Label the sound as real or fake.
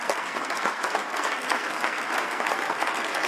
fake